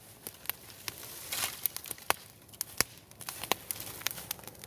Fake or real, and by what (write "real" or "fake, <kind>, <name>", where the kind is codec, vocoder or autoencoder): real